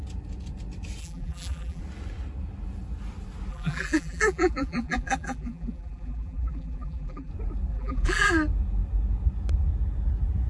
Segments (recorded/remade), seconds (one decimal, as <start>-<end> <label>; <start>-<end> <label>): 0.0-1.0 recorded; 1.0-1.8 remade; 1.8-3.5 recorded; 3.5-7.3 remade; 7.3-7.7 recorded; 7.7-8.3 remade; 8.3-10.5 recorded